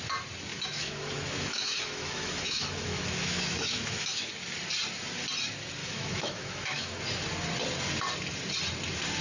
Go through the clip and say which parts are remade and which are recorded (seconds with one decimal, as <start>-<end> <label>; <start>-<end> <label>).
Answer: 0.0-0.5 recorded; 0.5-4.3 remade; 4.3-5.8 recorded; 5.8-7.0 remade; 7.0-9.2 recorded